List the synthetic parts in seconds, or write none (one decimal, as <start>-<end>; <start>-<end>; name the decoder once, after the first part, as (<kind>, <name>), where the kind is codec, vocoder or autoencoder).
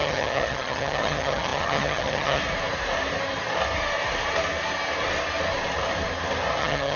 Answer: 0.0-2.4 (vocoder, HiFi-GAN); 6.6-7.0